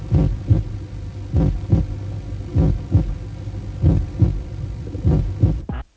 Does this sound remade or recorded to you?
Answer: recorded